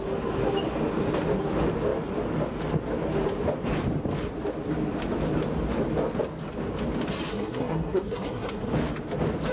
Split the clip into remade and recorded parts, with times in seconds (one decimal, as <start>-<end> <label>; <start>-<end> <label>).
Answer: 0.0-7.3 recorded; 7.3-8.7 remade; 8.7-9.5 recorded